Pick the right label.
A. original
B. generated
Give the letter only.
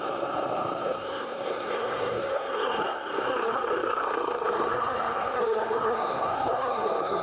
B